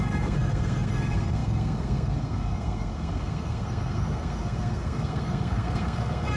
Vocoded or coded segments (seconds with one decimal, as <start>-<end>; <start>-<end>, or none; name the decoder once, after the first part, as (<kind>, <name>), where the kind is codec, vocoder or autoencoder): 0.0-6.4 (codec, SNAC)